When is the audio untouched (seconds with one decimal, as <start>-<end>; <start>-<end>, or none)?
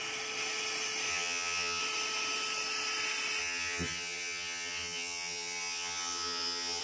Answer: 0.0-1.1; 1.8-3.4